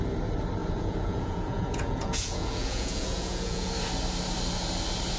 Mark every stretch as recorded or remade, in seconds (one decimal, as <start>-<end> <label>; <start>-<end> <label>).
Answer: 0.0-0.6 recorded; 0.6-3.7 remade; 3.7-5.2 recorded